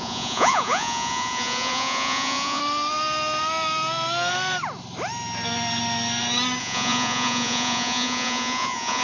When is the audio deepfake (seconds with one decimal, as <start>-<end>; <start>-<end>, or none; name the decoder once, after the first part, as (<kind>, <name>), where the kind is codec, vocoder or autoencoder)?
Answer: 0.0-2.6 (vocoder, Vocos); 6.6-9.0